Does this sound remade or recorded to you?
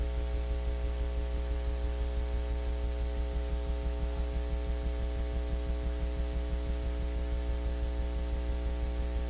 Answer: recorded